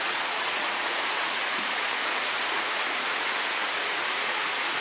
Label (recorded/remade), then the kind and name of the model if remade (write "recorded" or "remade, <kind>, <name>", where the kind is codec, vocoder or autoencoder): remade, vocoder, Vocos